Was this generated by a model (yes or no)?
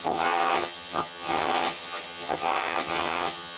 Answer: yes